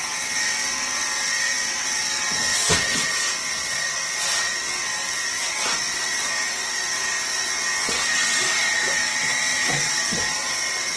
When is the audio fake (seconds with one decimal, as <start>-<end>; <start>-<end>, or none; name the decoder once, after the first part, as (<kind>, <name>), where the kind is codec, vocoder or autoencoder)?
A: 0.0-11.0 (vocoder, WaveNeXt)